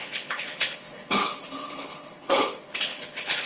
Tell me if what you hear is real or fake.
fake